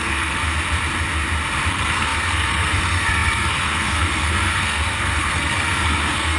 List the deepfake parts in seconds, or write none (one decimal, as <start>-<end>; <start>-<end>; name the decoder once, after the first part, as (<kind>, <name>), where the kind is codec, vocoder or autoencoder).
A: 0.0-0.4 (codec, SNAC); 1.7-6.4